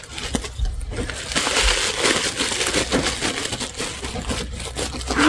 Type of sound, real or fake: real